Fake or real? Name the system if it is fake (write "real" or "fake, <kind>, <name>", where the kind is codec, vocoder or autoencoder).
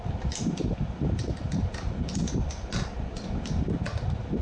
real